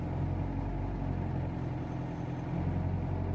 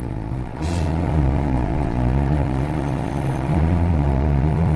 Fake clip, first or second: second